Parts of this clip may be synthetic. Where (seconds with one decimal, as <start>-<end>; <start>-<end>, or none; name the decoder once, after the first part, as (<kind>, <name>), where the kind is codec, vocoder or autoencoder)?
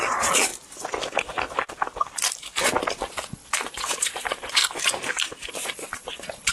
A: 0.0-0.5 (vocoder, Vocos); 3.0-4.6; 5.5-6.5